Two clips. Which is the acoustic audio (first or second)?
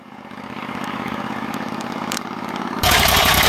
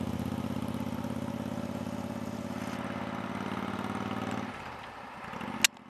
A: second